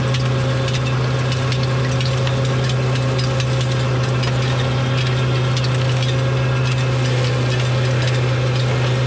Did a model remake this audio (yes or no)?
no